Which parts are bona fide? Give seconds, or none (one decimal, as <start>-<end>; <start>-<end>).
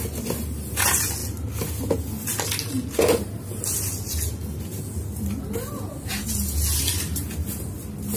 0.0-8.2